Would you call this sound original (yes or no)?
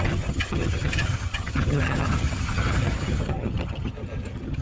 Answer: no